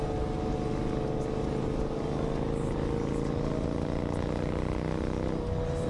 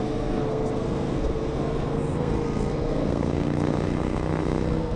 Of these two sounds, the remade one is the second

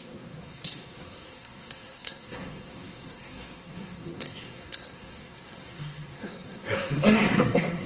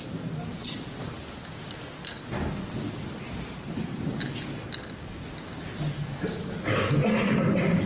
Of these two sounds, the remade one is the first